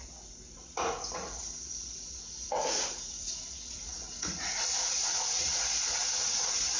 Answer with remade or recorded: remade